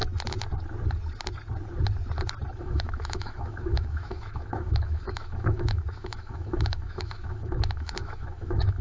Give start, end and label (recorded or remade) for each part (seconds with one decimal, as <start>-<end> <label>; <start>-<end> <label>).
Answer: 0.0-2.6 recorded; 2.6-8.8 remade